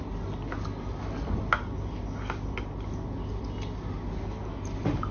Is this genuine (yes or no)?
yes